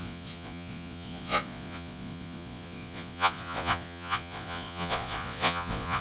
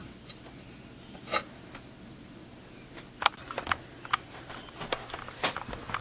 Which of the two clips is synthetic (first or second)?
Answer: first